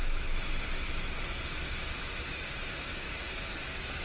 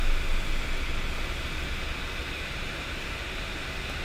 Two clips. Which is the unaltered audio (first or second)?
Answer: second